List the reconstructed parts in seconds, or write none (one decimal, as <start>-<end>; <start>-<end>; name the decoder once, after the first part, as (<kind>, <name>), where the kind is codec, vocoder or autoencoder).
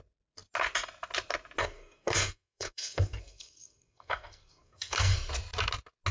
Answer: 1.6-5.3 (codec, SNAC)